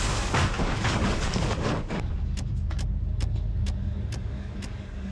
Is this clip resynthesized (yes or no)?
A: yes